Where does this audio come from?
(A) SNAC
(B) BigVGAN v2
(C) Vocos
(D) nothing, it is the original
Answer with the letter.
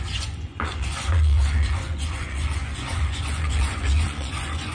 C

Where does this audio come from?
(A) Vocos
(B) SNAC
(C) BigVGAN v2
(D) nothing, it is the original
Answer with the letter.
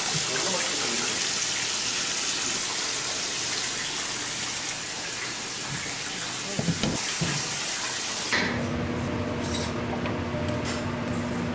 D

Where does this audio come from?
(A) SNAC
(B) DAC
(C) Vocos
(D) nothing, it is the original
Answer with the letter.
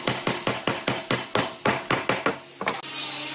D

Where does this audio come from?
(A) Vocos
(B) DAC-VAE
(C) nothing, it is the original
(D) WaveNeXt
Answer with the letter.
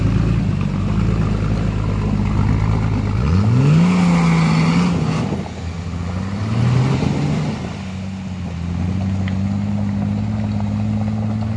C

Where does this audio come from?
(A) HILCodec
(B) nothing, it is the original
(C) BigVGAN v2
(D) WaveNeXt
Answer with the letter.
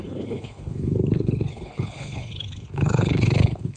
A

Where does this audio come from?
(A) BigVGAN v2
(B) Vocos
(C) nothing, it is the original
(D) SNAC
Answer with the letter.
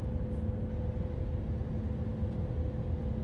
C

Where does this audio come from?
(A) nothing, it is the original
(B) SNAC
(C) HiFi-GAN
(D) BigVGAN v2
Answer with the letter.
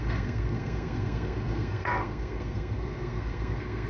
B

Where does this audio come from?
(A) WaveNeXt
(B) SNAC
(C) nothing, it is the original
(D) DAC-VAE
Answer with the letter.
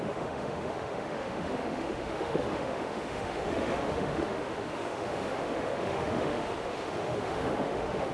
D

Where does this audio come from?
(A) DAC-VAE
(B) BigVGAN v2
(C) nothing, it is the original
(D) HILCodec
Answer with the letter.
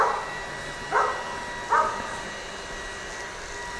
C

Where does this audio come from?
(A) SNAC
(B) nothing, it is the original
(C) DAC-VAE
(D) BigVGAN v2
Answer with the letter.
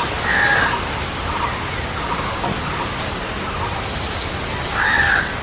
B